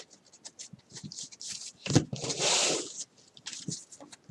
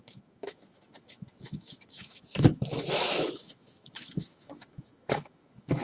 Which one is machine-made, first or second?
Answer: second